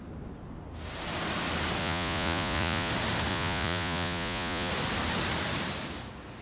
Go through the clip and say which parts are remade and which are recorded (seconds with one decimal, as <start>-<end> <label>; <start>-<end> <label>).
0.0-1.8 recorded; 1.8-2.9 remade; 2.9-3.3 recorded; 3.3-4.7 remade; 4.7-6.4 recorded